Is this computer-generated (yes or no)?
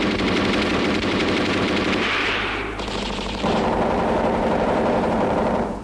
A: yes